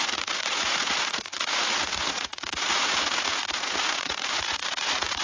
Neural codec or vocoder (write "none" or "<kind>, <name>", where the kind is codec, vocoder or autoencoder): vocoder, Vocos